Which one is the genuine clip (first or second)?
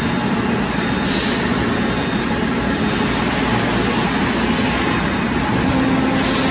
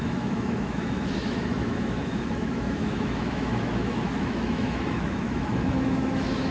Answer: first